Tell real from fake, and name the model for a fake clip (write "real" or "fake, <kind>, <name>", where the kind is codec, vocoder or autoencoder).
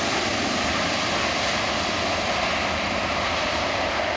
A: real